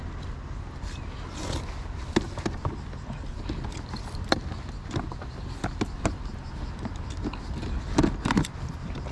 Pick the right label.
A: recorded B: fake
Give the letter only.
A